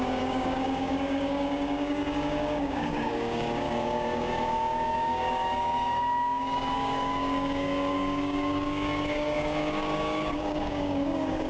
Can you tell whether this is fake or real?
fake